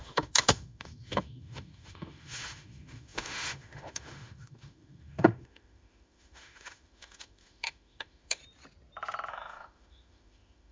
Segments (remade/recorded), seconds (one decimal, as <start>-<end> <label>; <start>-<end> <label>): 0.0-8.4 remade; 8.4-9.3 recorded; 9.3-10.7 remade